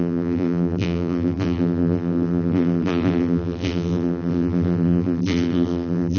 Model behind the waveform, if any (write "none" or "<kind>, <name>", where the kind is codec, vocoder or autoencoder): vocoder, BigVGAN v2